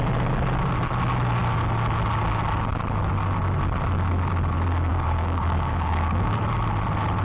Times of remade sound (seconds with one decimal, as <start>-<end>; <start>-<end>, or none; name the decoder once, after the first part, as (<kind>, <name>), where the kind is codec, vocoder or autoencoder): 4.9-6.4 (codec, DAC)